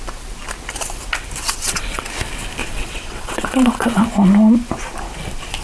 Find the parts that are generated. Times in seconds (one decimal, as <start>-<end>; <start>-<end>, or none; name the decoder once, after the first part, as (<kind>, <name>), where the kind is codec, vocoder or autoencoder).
1.4-2.1 (vocoder, WaveNeXt); 2.6-4.0